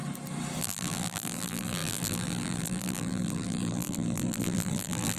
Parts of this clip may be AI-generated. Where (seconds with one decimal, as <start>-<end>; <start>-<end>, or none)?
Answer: 0.6-5.2